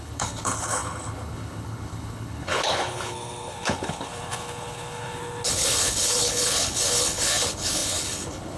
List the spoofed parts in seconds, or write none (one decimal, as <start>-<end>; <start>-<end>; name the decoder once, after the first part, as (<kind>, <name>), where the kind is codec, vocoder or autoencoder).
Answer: 0.0-8.6 (codec, HILCodec)